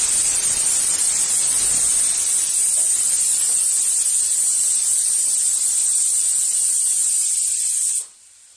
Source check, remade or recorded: recorded